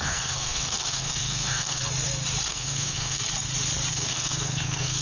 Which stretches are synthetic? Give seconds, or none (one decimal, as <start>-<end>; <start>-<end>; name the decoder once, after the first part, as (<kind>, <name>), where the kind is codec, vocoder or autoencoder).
0.0-1.8 (codec, SNAC); 2.5-3.2; 3.9-5.0

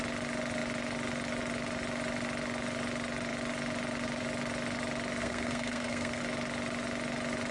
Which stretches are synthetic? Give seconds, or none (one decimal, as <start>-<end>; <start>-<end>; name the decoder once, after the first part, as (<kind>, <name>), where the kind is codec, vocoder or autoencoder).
5.2-6.2 (codec, SNAC)

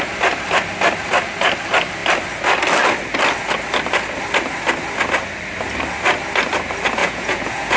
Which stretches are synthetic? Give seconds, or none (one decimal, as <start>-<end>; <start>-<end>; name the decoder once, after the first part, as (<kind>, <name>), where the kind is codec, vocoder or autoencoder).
7.0-7.8 (vocoder, Vocos)

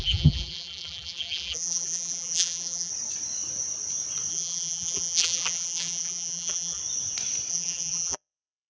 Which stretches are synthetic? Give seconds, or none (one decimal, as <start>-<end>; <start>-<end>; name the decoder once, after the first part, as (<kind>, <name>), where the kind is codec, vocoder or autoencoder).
0.0-2.9 (vocoder, BigVGAN v2); 4.3-6.8; 7.5-8.7

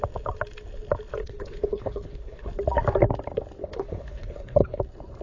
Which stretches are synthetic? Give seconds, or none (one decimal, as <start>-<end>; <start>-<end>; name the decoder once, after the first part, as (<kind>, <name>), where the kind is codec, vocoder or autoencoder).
1.2-2.5 (codec, HILCodec); 3.6-4.8

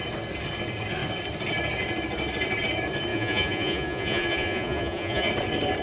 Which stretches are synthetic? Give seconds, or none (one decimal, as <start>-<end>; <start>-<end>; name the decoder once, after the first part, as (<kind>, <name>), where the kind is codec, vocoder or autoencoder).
3.1-5.3 (vocoder, Vocos)

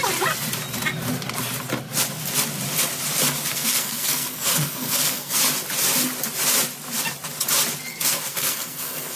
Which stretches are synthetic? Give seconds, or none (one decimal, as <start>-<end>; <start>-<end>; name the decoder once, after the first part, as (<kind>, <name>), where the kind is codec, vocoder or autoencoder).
3.5-5.4 (codec, SNAC); 7.9-9.2